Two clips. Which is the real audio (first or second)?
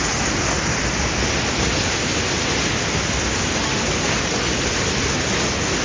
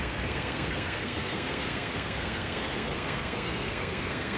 first